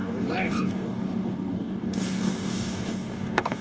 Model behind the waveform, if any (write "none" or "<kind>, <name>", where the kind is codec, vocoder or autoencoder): codec, DAC